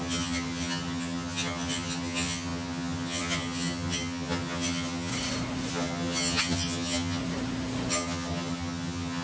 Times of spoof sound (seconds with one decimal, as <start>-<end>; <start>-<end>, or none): 0.0-5.1; 5.7-7.2; 7.9-9.2